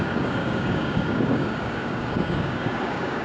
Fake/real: fake